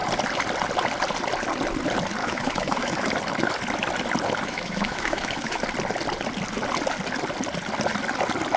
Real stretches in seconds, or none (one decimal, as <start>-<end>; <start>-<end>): 0.0-2.2; 3.1-4.5; 5.6-8.6